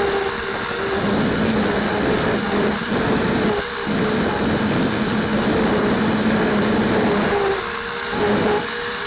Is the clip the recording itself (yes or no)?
yes